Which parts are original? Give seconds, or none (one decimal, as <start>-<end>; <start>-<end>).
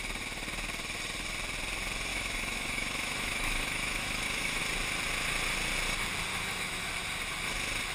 0.0-2.1; 4.6-6.3; 6.9-7.9